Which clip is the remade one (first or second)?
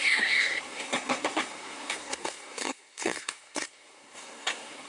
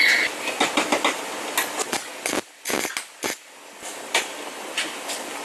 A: first